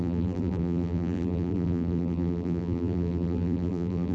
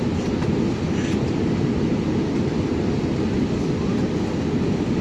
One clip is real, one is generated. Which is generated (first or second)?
first